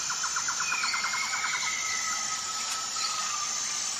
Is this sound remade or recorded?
recorded